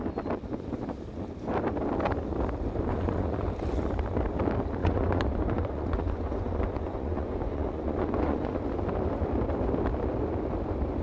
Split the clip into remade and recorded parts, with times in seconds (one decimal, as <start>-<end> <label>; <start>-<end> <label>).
0.0-2.9 recorded; 2.9-3.5 remade; 3.5-4.8 recorded; 4.8-8.6 remade; 8.6-11.0 recorded